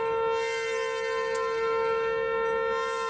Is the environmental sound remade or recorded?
recorded